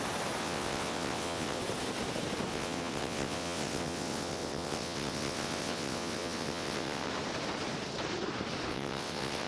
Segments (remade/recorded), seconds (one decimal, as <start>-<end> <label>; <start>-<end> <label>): 0.0-0.4 recorded; 0.4-1.6 remade; 1.6-2.5 recorded; 2.5-7.1 remade; 7.1-8.7 recorded; 8.7-9.5 remade